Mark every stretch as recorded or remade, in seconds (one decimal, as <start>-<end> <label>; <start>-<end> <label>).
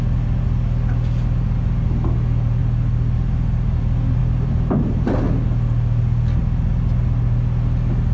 0.0-2.6 recorded; 2.6-3.8 remade; 3.8-4.2 recorded; 4.2-5.2 remade; 5.2-8.1 recorded